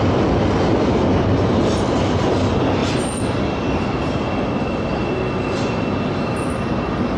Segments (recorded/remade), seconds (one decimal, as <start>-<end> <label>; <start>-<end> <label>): 0.0-7.2 recorded